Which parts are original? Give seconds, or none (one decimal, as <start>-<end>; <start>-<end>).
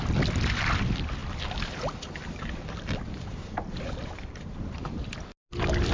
0.0-5.9